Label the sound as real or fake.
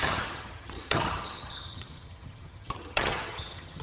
fake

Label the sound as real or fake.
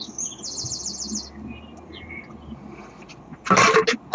real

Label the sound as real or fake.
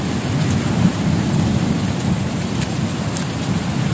real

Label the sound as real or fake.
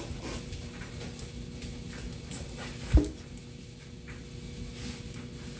real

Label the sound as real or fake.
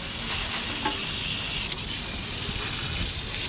real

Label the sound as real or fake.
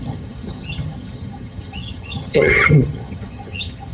fake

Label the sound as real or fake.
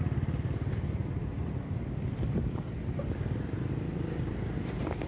real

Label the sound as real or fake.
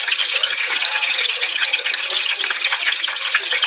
fake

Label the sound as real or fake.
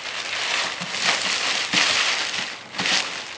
real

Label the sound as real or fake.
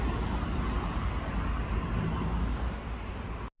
real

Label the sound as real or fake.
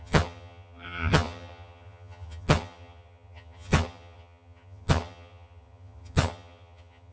fake